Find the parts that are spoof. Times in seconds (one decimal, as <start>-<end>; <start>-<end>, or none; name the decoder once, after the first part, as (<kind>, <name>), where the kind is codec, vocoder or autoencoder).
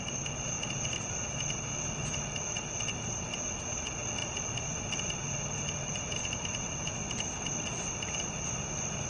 none